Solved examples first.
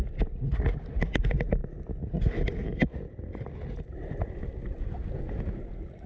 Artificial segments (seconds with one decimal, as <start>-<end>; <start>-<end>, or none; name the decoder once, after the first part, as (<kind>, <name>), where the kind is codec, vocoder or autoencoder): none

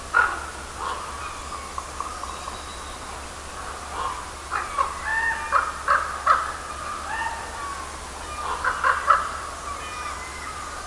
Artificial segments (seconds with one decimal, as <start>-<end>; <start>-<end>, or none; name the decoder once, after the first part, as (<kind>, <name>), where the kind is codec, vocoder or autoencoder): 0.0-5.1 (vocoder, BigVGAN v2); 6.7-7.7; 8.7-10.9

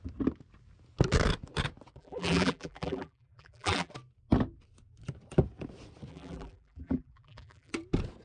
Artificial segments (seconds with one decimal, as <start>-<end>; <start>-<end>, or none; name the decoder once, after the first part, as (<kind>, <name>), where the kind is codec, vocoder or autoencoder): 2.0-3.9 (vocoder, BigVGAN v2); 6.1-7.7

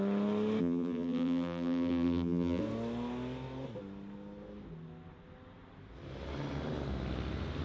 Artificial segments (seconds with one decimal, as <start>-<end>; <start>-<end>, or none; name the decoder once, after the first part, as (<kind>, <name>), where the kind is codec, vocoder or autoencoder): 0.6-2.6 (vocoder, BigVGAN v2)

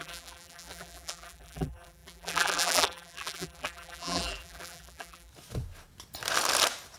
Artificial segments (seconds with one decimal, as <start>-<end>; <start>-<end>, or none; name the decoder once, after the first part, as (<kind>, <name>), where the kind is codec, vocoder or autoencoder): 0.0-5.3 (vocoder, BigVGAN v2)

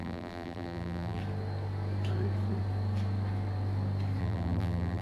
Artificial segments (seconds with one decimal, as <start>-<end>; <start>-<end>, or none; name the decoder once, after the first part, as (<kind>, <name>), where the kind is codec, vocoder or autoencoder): 0.0-1.2 (vocoder, BigVGAN v2); 4.2-5.0